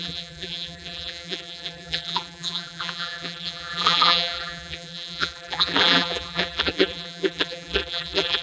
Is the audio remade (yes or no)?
yes